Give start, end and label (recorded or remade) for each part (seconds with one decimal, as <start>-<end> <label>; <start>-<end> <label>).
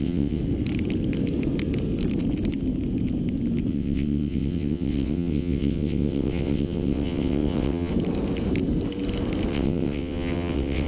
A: 0.0-0.4 remade; 0.4-3.7 recorded; 3.7-7.9 remade; 7.9-9.5 recorded; 9.5-10.9 remade